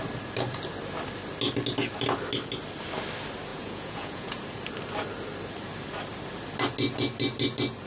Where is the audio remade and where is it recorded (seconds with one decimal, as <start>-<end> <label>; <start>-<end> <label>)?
0.0-3.5 recorded; 3.5-4.4 remade; 4.4-7.9 recorded

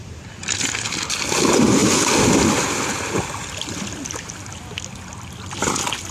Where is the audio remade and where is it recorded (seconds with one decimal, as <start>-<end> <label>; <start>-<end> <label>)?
0.0-6.1 recorded

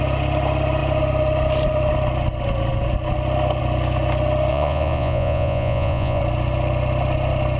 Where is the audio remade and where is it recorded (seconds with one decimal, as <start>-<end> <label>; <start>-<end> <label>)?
0.0-4.5 recorded; 4.5-6.2 remade; 6.2-7.6 recorded